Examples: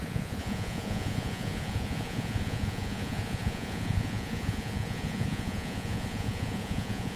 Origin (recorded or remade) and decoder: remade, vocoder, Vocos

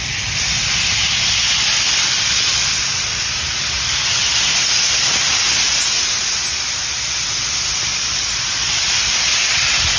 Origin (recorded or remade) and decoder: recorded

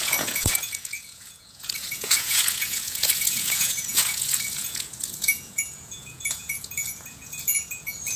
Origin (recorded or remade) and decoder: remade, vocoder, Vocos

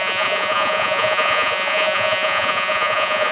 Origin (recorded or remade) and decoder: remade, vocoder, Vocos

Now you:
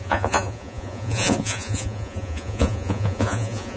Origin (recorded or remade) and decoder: remade, vocoder, Vocos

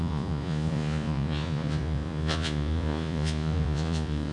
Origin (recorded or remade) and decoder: remade, vocoder, Vocos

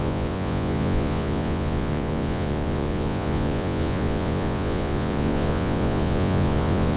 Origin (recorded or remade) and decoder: remade, vocoder, Vocos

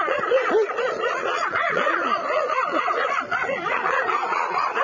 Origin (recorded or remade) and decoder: remade, vocoder, Vocos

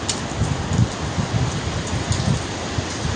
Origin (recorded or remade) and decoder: recorded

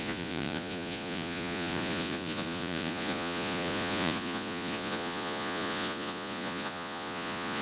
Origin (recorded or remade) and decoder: remade, vocoder, Vocos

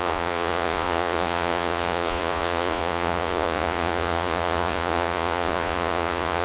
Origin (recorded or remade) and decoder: remade, vocoder, Vocos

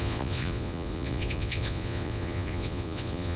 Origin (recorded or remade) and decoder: remade, vocoder, Vocos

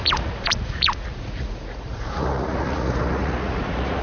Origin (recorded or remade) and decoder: remade, vocoder, Vocos